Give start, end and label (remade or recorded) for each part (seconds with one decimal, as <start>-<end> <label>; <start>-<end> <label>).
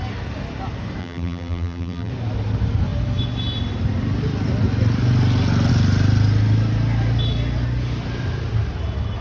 0.0-1.0 recorded; 1.0-2.1 remade; 2.1-9.2 recorded